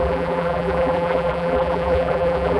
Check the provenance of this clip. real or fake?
fake